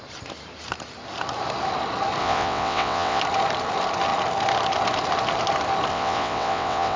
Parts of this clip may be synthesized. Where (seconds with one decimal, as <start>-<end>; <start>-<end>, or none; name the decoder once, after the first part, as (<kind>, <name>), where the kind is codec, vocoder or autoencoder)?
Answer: 2.2-3.2 (vocoder, WaveNeXt); 5.9-7.0